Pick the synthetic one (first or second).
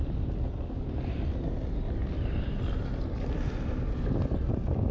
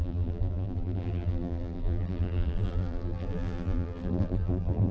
second